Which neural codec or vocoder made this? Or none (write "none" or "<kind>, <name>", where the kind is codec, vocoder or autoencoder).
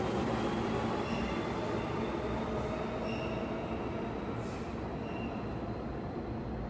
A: none